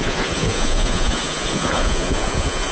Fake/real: fake